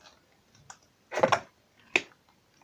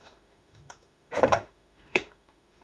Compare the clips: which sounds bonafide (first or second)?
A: first